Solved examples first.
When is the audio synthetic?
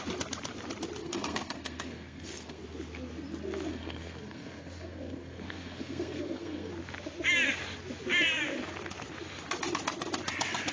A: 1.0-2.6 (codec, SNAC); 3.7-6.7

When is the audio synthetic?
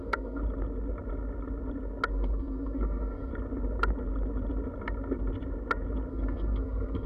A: 0.0-0.4 (codec, SNAC); 2.1-3.3; 6.1-7.1